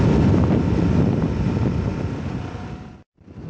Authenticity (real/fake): real